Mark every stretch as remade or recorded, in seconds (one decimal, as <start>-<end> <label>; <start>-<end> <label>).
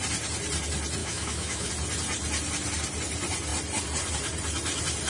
0.0-1.0 recorded; 1.0-1.7 remade; 1.7-5.1 recorded